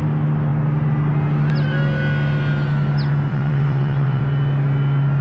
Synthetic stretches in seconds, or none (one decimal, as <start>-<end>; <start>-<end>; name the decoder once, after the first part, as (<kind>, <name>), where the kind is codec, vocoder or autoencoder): 3.3-4.2 (vocoder, WaveNeXt)